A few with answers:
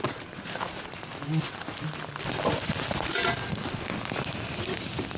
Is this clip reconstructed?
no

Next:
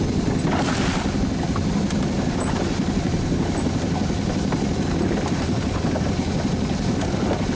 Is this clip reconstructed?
no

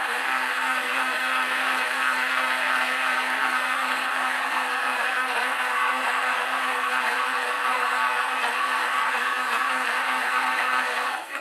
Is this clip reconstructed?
yes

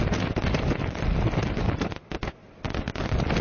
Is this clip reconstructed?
no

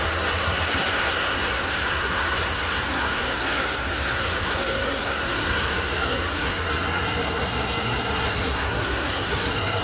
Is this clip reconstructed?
yes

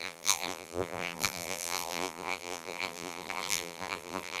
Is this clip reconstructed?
yes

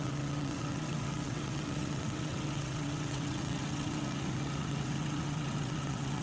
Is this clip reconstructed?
yes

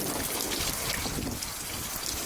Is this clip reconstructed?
no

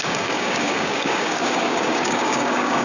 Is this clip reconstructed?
yes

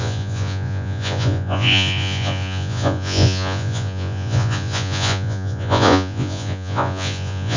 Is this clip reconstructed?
yes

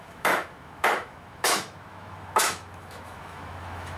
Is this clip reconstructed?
yes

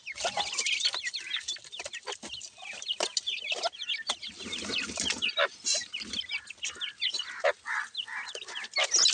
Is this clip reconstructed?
no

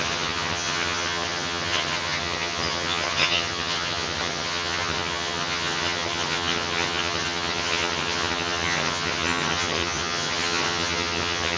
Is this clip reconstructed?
yes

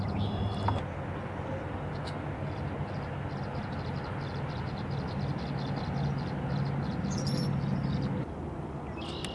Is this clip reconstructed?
no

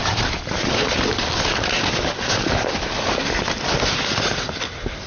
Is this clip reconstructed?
no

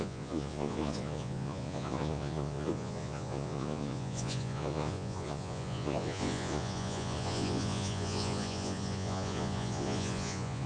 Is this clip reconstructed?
yes